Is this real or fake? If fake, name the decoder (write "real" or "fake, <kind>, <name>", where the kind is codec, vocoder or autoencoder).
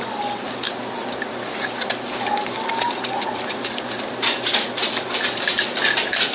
real